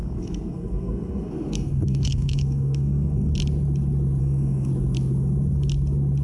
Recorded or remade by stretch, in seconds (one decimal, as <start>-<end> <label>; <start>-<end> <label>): 0.0-3.3 remade; 3.3-4.2 recorded; 4.2-4.7 remade; 4.7-6.2 recorded

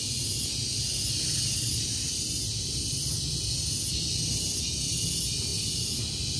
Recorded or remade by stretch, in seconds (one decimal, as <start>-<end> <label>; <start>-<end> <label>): 0.0-6.4 recorded

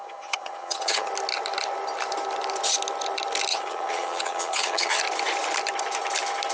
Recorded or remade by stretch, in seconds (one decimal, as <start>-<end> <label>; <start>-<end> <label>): 0.0-1.1 remade; 1.1-3.5 recorded; 3.5-5.0 remade; 5.0-6.5 recorded

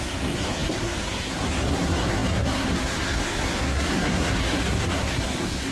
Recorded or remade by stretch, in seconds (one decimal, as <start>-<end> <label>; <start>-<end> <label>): 0.0-5.7 remade

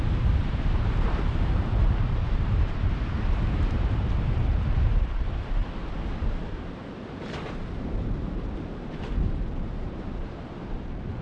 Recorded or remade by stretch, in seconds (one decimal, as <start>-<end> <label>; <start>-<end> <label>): 0.0-5.6 remade; 5.6-7.1 recorded; 7.1-11.2 remade